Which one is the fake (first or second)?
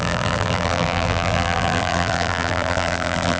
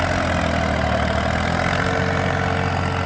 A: first